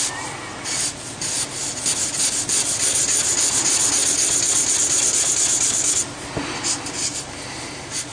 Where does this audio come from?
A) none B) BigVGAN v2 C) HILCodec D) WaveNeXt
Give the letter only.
A